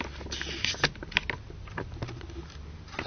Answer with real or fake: real